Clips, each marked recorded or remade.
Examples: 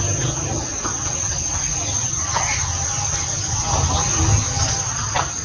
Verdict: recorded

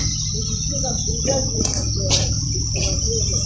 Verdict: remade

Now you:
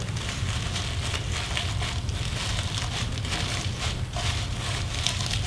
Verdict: recorded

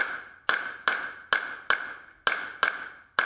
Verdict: recorded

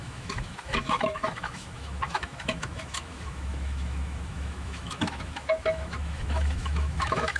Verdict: remade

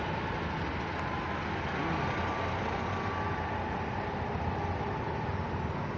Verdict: recorded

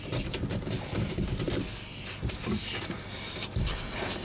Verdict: recorded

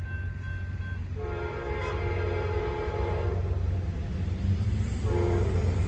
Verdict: recorded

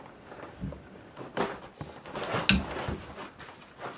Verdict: recorded